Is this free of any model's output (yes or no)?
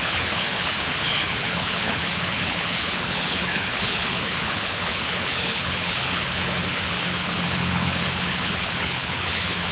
no